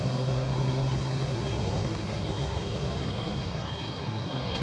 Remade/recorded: remade